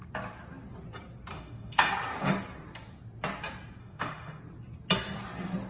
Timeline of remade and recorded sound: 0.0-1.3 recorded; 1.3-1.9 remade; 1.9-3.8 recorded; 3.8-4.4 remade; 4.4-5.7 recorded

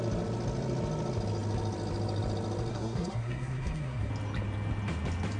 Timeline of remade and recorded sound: 0.0-2.7 recorded; 2.7-4.1 remade; 4.1-5.4 recorded

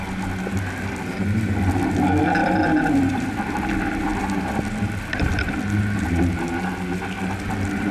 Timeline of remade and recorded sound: 0.0-2.4 recorded; 2.4-4.4 remade; 4.4-7.9 recorded

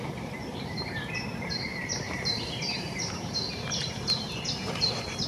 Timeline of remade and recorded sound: 0.0-5.3 remade

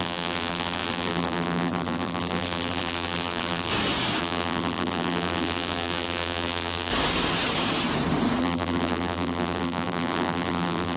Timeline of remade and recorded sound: 0.0-3.7 remade; 3.7-4.2 recorded; 4.2-6.9 remade; 6.9-8.4 recorded; 8.4-11.0 remade